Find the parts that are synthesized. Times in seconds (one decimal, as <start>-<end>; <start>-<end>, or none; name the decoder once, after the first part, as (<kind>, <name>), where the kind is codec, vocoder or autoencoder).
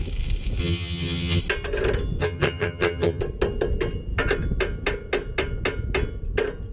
0.6-1.4 (vocoder, HiFi-GAN); 2.2-3.2